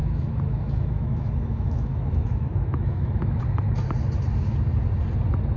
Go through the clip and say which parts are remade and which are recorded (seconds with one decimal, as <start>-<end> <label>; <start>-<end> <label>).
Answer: 0.0-3.4 remade; 3.4-5.6 recorded

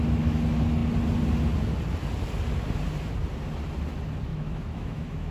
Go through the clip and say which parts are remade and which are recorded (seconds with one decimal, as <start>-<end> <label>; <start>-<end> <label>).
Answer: 0.0-4.3 recorded; 4.3-5.3 remade

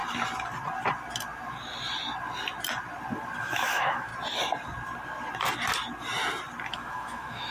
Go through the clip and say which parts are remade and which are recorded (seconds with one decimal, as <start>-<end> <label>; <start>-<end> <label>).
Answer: 0.0-3.4 recorded; 3.4-4.1 remade; 4.1-6.7 recorded; 6.7-7.5 remade

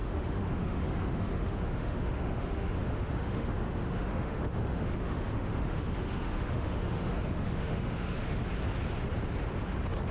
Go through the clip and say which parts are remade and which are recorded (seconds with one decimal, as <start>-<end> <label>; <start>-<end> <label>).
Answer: 0.0-8.4 remade; 8.4-10.1 recorded

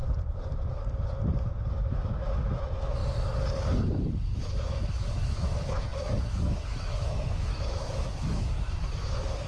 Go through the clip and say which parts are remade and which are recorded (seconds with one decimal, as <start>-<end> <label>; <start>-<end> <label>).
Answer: 0.0-1.7 recorded; 1.7-3.0 remade; 3.0-4.3 recorded; 4.3-9.5 remade

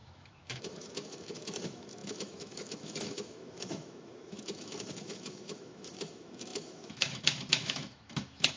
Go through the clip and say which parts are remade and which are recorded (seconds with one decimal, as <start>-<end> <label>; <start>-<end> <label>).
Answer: 0.0-8.6 remade

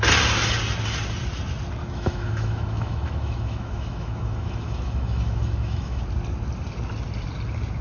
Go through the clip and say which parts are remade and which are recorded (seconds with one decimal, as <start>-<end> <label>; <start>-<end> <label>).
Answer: 0.0-1.8 recorded; 1.8-6.0 remade; 6.0-7.8 recorded

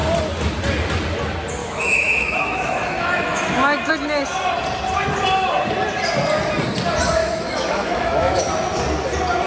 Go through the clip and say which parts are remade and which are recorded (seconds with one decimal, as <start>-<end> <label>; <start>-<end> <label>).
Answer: 0.0-1.6 recorded; 1.6-3.9 remade; 3.9-7.2 recorded; 7.2-8.5 remade; 8.5-9.5 recorded